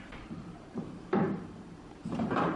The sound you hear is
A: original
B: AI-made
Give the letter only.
B